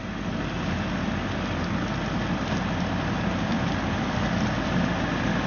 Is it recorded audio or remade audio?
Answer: recorded